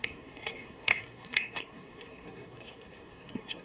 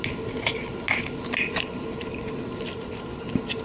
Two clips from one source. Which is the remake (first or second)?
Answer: first